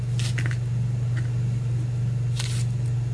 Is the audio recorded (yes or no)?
yes